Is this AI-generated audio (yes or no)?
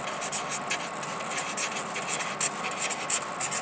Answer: no